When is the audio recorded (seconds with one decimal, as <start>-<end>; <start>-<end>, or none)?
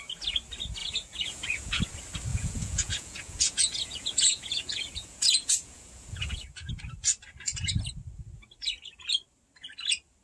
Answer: 0.0-0.8; 1.8-2.3; 6.7-10.2